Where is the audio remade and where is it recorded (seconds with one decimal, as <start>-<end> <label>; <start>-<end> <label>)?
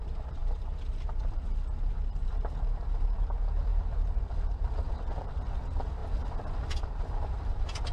0.0-6.0 remade; 6.0-6.7 recorded; 6.7-7.9 remade